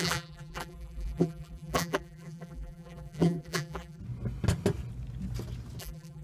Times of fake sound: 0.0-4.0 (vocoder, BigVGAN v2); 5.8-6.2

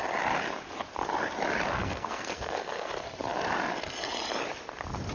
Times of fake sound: 1.8-2.9 (codec, SNAC)